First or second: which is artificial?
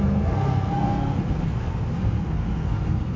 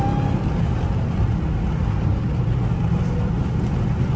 first